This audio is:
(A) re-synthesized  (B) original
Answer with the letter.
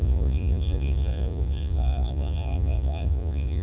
A